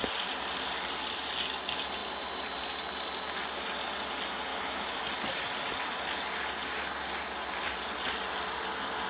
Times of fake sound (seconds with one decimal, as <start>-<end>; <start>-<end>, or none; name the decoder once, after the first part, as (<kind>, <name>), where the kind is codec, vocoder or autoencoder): 4.5-5.0 (autoencoder, DAC-VAE)